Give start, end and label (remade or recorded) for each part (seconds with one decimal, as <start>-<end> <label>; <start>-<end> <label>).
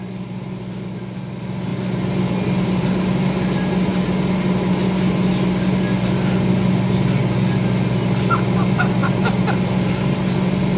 0.0-10.8 recorded